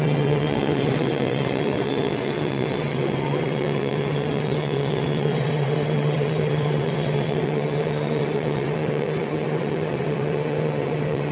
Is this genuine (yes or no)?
no